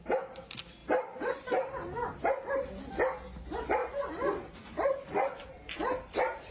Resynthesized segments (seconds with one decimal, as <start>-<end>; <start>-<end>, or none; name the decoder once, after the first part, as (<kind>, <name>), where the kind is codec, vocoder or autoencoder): 3.8-5.1 (vocoder, BigVGAN v2)